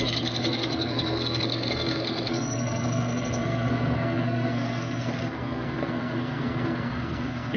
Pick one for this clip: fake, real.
fake